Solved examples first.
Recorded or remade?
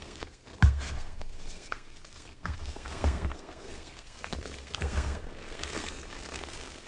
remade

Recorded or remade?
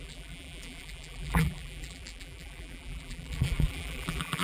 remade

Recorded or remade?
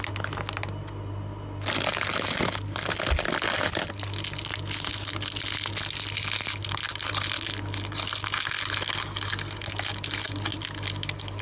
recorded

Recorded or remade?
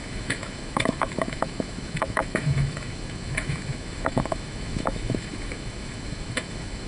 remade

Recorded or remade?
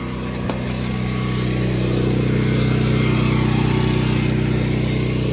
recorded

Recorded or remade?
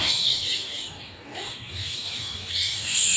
remade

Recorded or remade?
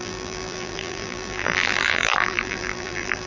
remade